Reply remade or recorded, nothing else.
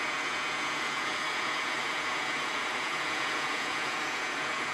remade